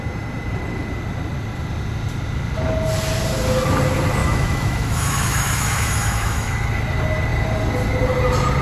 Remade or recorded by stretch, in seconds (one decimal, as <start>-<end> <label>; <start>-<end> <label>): 0.0-4.2 recorded; 4.2-6.5 remade; 6.5-8.6 recorded